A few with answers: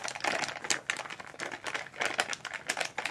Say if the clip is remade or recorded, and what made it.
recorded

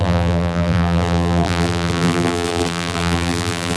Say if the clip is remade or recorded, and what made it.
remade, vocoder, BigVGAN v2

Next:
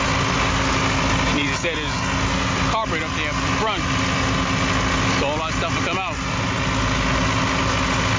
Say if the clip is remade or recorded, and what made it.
recorded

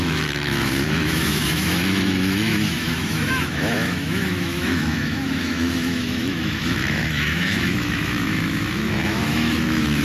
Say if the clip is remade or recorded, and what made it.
remade, autoencoder, DAC-VAE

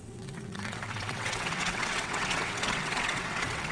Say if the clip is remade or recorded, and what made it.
remade, vocoder, WaveNeXt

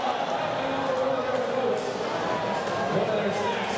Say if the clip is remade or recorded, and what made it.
recorded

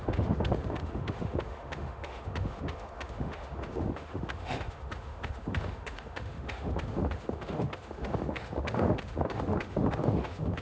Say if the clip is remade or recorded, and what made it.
remade, autoencoder, DAC-VAE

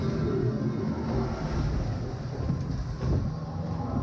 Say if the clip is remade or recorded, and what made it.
recorded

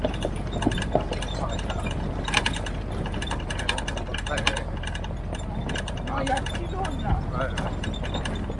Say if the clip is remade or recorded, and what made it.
recorded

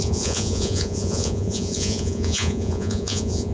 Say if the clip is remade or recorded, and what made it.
remade, vocoder, Vocos